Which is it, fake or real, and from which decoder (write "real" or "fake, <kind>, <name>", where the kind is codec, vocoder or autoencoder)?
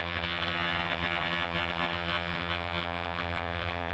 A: fake, vocoder, HiFi-GAN